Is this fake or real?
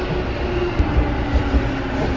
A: real